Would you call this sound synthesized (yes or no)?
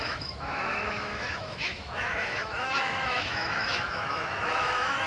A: yes